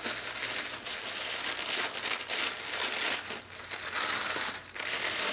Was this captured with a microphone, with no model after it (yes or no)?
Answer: yes